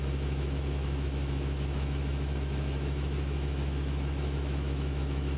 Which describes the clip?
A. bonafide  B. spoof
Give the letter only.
B